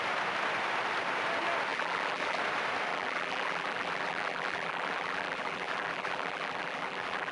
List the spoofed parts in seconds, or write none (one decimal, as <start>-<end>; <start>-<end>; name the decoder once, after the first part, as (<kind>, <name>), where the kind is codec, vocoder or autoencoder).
1.7-2.4 (vocoder, BigVGAN v2); 2.9-7.3

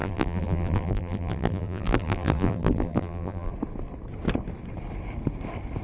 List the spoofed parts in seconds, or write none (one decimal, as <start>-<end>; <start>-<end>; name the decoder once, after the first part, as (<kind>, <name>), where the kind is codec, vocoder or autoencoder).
0.0-3.5 (vocoder, BigVGAN v2)

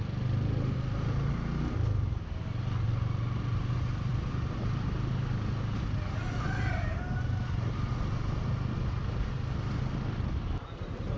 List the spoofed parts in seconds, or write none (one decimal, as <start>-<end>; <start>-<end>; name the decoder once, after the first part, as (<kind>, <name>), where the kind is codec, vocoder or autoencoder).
4.1-4.8 (vocoder, BigVGAN v2)

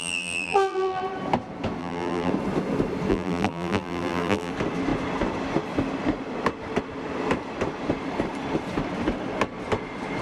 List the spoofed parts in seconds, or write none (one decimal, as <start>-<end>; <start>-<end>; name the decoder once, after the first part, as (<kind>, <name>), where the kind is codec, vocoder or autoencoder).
0.0-1.0 (vocoder, BigVGAN v2); 1.8-2.3; 3.1-4.5